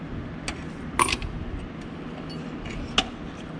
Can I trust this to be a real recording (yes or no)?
yes